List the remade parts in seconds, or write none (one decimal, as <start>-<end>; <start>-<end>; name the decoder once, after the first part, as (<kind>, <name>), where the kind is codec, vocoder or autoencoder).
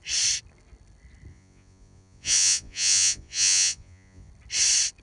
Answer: 1.3-4.3 (vocoder, Vocos)